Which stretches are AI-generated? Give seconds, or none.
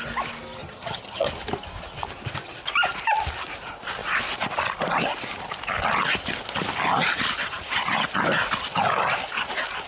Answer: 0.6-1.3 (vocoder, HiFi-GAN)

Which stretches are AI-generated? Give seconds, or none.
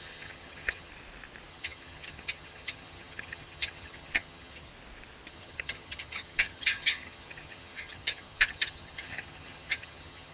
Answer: 0.0-0.9 (vocoder, HiFi-GAN); 1.5-4.7; 5.3-10.3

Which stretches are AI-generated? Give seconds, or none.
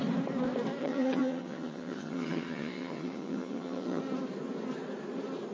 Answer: 0.8-4.0 (vocoder, HiFi-GAN)